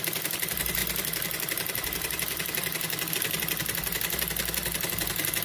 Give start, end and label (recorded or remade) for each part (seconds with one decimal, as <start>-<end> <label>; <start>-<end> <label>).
0.0-5.4 recorded